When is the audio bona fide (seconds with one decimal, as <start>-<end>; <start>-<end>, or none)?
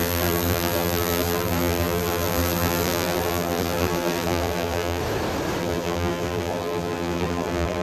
5.0-5.6